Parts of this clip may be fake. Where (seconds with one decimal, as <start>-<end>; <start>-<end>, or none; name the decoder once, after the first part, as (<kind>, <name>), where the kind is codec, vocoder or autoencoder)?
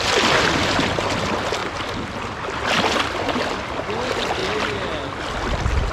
none